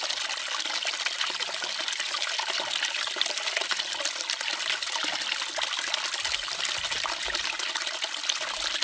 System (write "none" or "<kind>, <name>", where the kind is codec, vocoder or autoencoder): none